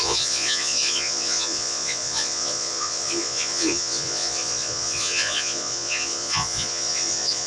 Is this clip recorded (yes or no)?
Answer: no